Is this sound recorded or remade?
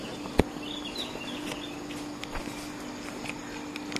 recorded